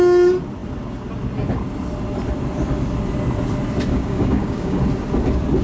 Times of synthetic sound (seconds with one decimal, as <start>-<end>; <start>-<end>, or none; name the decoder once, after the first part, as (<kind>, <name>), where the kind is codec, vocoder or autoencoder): 3.9-4.8 (codec, DAC)